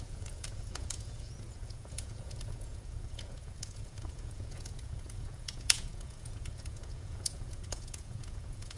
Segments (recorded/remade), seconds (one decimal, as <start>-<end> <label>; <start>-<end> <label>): 0.0-8.8 remade